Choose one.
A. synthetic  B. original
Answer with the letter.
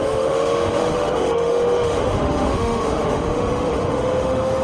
A